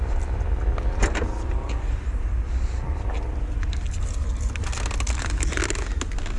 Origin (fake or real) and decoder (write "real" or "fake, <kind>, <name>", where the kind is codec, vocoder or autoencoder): real